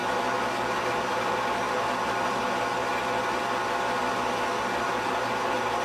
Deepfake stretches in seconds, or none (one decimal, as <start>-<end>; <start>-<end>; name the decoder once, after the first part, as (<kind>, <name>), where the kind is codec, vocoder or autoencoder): 0.8-2.9 (vocoder, BigVGAN v2); 4.8-5.8